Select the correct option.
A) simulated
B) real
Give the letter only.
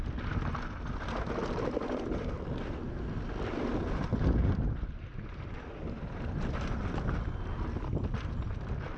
B